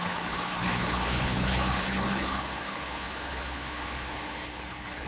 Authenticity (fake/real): fake